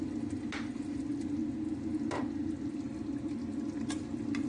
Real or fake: real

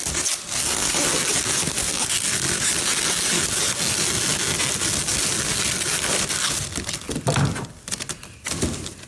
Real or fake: real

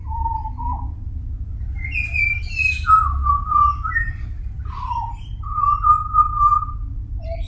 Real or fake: real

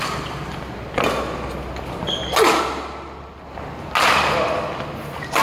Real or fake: real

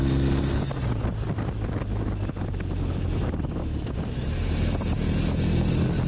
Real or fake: real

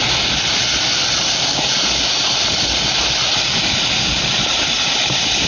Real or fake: real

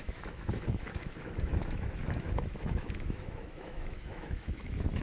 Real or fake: fake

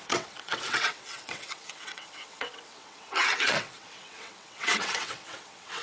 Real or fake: fake